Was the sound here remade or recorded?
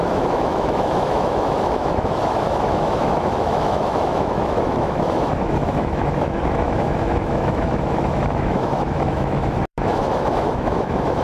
remade